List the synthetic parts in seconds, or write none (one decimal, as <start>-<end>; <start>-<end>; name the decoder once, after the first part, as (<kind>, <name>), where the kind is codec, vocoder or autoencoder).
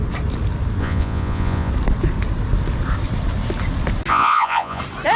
0.8-1.7 (vocoder, Vocos); 4.1-4.8